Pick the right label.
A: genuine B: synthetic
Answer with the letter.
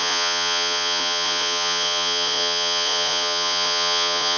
B